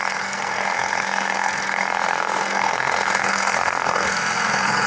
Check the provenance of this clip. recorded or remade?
remade